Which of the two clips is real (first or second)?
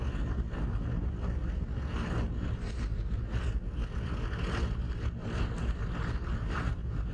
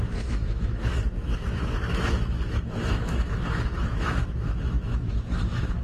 first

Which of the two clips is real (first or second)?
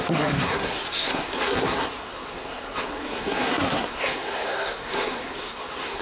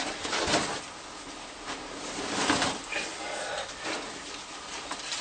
second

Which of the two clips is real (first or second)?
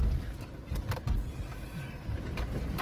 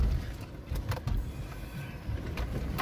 first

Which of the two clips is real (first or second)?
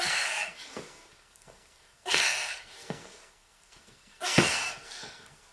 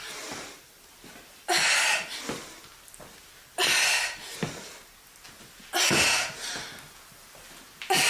second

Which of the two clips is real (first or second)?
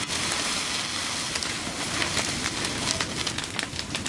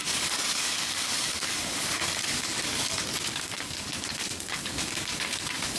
first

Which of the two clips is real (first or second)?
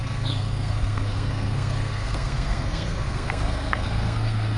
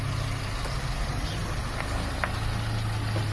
second